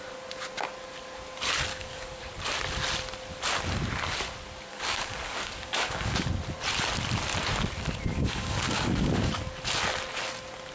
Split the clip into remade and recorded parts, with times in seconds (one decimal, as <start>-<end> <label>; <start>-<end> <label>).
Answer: 0.0-1.7 recorded; 1.7-2.2 remade; 2.2-4.7 recorded; 4.7-6.1 remade; 6.1-8.1 recorded; 8.1-9.3 remade; 9.3-10.7 recorded